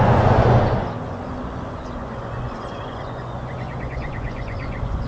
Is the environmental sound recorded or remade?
remade